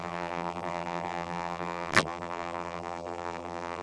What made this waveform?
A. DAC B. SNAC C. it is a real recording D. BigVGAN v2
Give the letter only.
D